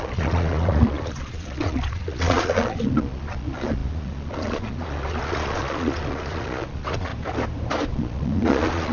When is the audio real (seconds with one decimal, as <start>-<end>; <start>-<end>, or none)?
7.1-7.9